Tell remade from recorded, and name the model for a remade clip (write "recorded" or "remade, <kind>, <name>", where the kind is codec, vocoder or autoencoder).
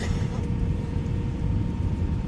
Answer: remade, vocoder, BigVGAN v2